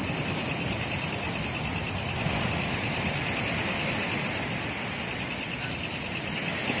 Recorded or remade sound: recorded